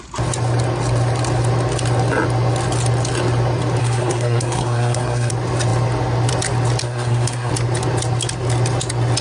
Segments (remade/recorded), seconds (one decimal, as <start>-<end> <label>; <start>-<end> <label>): 0.0-3.8 recorded; 3.8-5.3 remade; 5.3-6.8 recorded; 6.8-7.5 remade; 7.5-9.2 recorded